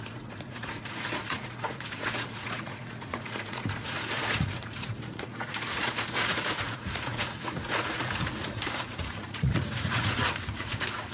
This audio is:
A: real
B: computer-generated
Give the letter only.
B